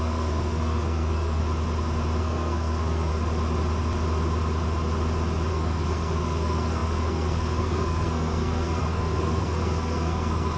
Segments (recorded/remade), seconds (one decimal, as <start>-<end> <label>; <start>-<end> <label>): 0.0-1.4 remade; 1.4-2.2 recorded; 2.2-3.1 remade; 3.1-5.5 recorded; 5.5-10.6 remade